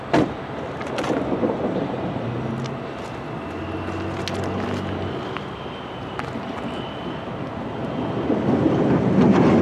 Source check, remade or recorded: recorded